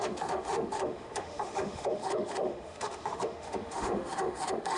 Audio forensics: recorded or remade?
remade